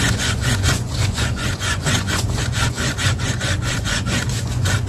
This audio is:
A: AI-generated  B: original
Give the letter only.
A